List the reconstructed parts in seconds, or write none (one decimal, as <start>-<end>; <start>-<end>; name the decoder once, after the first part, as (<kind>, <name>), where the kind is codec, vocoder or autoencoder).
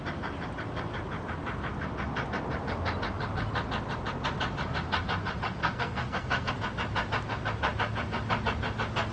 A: 5.6-6.5 (codec, SNAC)